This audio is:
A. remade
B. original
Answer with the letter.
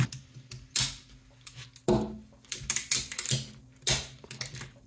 B